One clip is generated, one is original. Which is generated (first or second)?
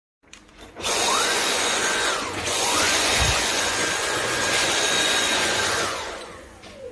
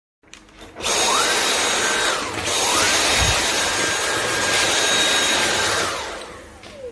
first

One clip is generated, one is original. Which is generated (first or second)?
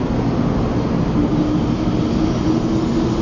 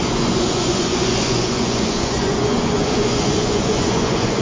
second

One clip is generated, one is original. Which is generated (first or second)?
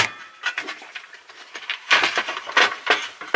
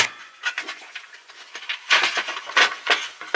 second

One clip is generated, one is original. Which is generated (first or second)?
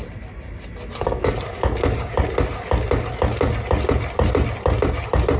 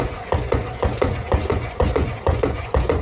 second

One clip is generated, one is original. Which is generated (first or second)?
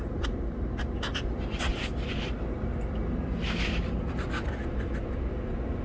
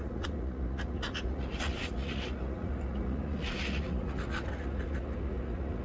second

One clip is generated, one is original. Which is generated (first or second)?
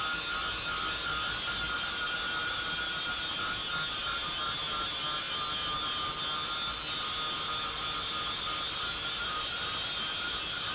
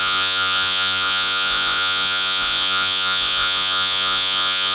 second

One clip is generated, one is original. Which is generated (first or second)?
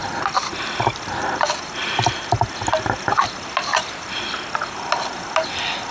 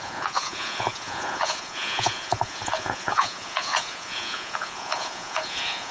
second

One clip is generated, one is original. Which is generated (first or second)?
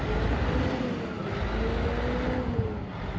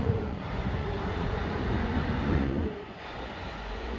second